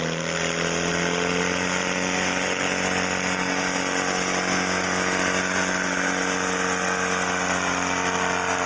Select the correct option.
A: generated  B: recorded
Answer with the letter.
B